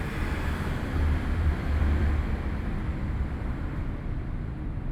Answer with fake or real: fake